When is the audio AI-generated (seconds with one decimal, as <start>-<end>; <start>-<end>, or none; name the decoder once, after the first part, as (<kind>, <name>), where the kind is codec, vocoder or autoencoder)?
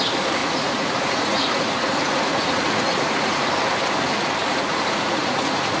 0.4-3.5 (vocoder, Vocos); 4.4-5.8